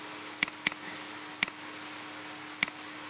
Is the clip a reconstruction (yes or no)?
no